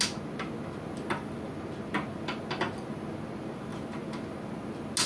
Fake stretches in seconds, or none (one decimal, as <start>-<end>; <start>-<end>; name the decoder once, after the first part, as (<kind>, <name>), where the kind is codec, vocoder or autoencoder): none